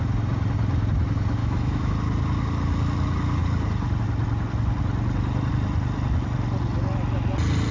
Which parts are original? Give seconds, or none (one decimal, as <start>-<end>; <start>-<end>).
0.0-1.4; 1.9-7.7

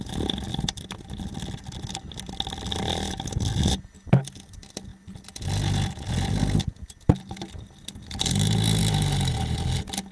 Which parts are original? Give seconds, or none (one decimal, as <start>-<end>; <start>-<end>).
0.0-10.1